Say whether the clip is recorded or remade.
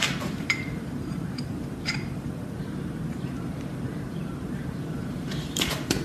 remade